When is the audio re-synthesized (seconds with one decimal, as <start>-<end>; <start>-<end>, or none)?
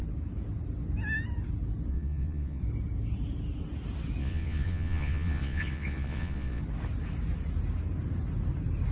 1.9-2.6; 4.2-6.6